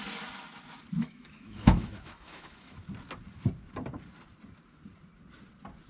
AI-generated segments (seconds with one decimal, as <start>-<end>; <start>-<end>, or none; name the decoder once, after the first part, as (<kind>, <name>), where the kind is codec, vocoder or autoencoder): 1.0-2.8 (autoencoder, DAC-VAE)